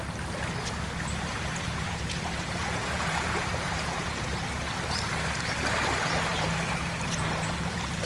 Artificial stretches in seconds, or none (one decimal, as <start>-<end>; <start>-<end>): 1.3-4.4